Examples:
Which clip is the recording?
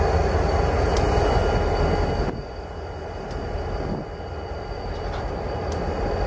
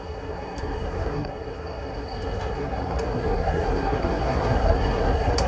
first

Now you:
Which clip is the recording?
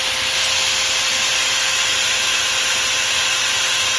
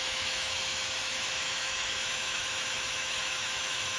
first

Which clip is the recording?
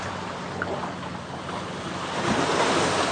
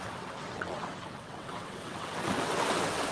first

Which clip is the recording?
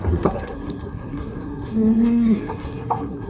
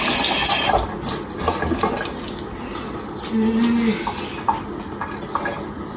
second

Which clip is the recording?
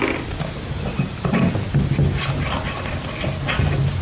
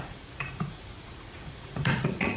first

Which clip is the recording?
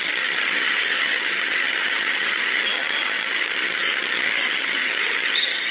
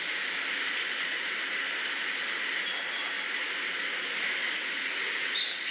second